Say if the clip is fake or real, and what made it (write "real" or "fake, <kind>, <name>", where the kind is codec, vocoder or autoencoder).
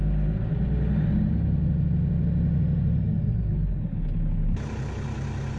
real